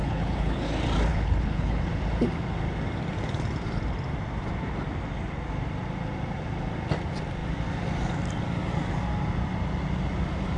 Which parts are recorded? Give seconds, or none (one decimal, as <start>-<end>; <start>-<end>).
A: 0.7-1.1; 1.8-10.6